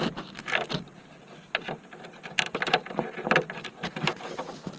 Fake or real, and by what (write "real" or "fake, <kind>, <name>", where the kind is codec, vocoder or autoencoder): fake, vocoder, BigVGAN v2